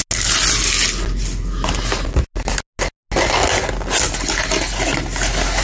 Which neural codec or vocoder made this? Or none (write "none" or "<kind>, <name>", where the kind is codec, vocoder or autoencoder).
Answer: none